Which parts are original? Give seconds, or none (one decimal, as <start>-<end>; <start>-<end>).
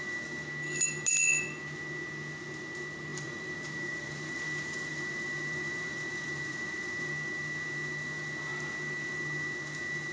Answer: 0.0-3.1; 7.1-10.1